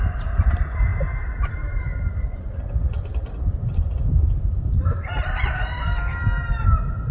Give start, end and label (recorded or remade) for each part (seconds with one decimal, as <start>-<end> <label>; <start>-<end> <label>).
0.0-7.1 recorded